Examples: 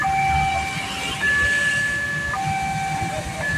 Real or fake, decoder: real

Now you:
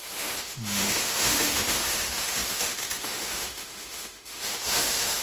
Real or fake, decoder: fake, autoencoder, DAC-VAE